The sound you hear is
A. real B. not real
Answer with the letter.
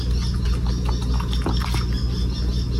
A